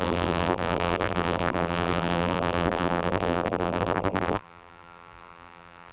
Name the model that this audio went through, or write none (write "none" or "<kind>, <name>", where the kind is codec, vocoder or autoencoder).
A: vocoder, BigVGAN v2